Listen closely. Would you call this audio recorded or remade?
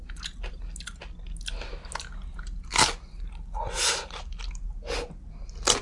recorded